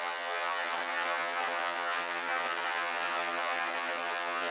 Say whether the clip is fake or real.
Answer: fake